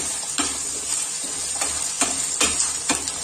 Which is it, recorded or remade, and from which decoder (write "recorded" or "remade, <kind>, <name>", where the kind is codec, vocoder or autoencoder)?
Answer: remade, vocoder, BigVGAN v2